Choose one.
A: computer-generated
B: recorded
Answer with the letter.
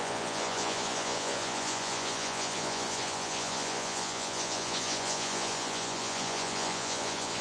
A